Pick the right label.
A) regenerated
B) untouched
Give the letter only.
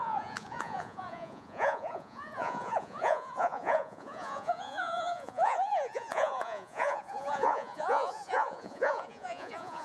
A